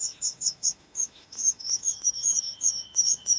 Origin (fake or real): fake